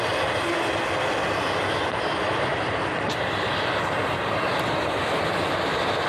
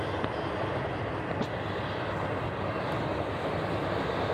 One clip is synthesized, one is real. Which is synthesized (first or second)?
first